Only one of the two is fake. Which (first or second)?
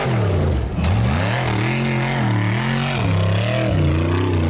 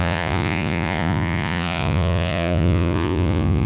second